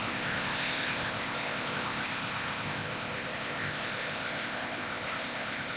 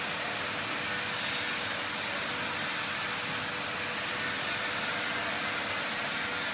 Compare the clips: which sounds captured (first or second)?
second